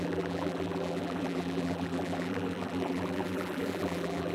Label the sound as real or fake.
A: fake